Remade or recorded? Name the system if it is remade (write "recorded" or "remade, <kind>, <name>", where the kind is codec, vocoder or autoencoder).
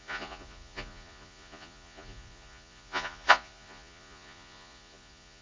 remade, vocoder, Vocos